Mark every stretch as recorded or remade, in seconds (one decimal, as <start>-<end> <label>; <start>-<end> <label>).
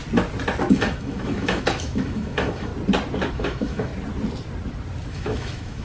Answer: 0.0-0.7 recorded; 0.7-2.7 remade; 2.7-3.3 recorded; 3.3-3.9 remade; 3.9-5.1 recorded; 5.1-5.8 remade